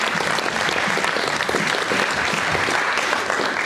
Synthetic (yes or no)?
no